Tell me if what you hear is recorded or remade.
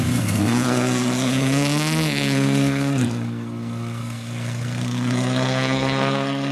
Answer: remade